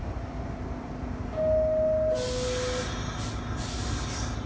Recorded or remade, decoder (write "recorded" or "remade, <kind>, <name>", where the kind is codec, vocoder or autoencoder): recorded